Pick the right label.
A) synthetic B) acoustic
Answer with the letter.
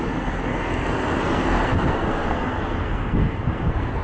A